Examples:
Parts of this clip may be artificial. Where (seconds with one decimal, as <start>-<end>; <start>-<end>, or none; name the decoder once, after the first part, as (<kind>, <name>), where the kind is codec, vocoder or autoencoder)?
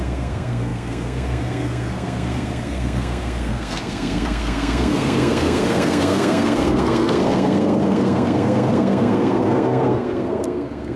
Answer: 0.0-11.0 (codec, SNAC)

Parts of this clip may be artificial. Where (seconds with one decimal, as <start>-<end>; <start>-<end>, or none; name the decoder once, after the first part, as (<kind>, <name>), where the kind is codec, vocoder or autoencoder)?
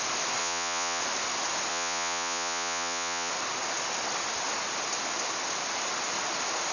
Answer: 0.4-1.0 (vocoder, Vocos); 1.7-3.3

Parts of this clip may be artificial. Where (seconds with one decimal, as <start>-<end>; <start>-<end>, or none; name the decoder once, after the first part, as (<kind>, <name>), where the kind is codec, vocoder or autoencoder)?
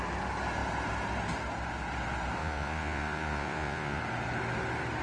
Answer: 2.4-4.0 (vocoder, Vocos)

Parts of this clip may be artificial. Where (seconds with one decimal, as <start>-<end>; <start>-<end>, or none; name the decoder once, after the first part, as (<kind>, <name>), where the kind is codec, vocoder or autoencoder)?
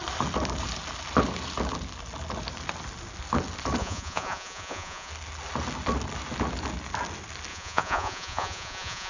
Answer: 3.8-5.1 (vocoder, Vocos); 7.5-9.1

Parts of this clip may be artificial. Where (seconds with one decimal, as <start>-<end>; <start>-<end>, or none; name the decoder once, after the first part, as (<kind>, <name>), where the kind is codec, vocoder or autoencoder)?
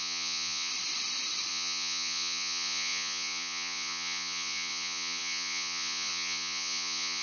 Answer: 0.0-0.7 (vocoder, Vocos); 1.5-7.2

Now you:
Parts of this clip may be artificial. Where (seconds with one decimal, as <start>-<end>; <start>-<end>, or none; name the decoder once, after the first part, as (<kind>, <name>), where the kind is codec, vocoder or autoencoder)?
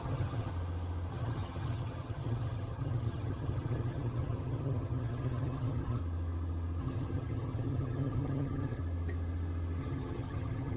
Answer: 0.0-0.5 (vocoder, HiFi-GAN); 1.1-6.0; 6.8-8.8; 9.8-10.8